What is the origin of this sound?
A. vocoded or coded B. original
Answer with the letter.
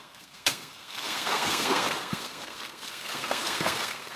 A